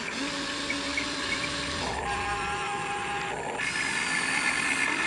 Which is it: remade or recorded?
recorded